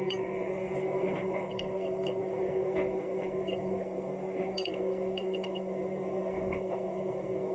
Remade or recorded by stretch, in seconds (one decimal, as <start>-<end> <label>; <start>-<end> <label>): 0.0-7.5 remade

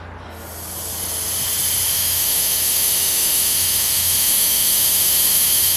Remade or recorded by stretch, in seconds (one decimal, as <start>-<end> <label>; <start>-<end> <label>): 0.0-1.9 recorded; 1.9-5.8 remade

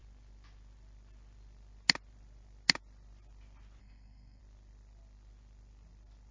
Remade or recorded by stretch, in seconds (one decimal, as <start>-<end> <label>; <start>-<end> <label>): 0.0-3.8 recorded; 3.8-4.4 remade; 4.4-6.3 recorded

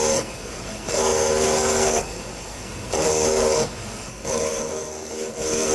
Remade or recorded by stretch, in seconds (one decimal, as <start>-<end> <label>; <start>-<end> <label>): 0.0-5.7 remade